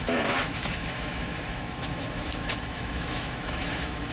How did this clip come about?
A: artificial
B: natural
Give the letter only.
A